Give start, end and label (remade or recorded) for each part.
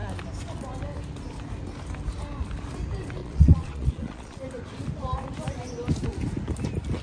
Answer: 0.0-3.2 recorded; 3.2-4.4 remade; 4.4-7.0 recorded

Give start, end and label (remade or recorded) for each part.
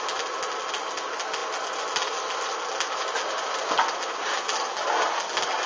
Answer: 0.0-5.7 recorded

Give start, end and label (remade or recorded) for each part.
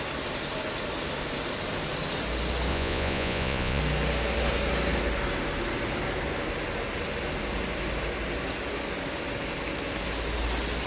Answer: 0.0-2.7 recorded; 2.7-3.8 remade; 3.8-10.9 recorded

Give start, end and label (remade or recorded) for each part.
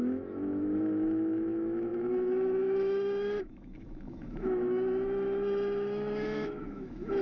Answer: 0.0-7.2 remade